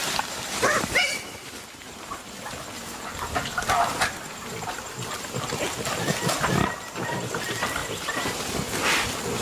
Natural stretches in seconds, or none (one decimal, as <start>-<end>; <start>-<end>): 0.0-9.4